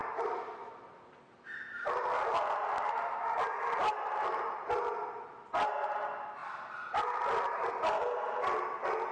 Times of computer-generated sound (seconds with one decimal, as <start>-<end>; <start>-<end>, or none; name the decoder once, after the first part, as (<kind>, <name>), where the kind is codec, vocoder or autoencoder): none